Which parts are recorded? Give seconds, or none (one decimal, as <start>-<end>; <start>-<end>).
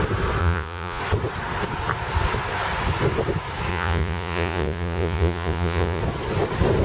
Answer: 0.0-0.4; 1.0-3.7; 6.0-6.8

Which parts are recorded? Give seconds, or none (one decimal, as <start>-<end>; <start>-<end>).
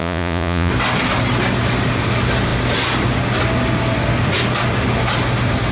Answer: 0.7-5.7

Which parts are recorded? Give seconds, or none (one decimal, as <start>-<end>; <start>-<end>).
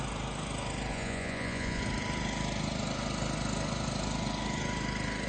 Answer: 0.0-0.9; 1.8-5.3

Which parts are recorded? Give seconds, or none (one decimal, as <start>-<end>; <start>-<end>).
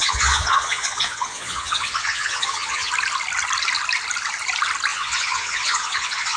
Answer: 2.9-4.9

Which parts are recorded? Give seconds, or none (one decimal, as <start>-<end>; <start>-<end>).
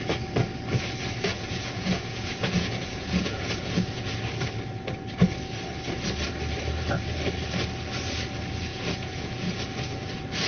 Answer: 0.0-1.3; 4.2-8.7; 9.6-10.5